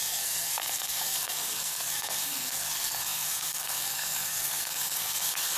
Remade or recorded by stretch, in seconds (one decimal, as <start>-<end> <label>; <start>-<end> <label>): 0.0-5.6 remade